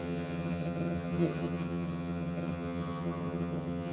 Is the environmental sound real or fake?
fake